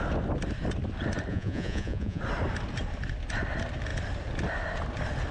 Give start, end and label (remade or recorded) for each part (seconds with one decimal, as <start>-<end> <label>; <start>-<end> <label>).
0.0-1.3 recorded; 1.3-2.2 remade; 2.2-5.3 recorded